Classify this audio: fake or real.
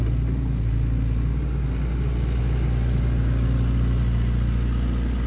real